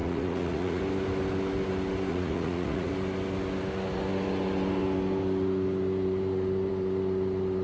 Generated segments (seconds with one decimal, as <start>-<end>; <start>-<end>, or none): 0.0-0.8; 2.1-2.9